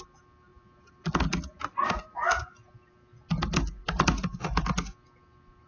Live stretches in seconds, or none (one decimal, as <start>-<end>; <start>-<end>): 0.0-5.7